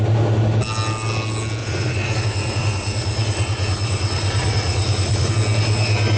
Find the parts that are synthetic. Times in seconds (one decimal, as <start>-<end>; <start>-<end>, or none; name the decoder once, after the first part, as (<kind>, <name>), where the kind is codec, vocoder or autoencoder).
1.6-5.3 (vocoder, Vocos)